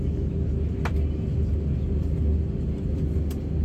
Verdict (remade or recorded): recorded